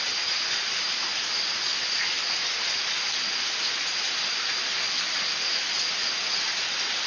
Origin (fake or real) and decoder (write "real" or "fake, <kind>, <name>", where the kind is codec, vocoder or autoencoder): real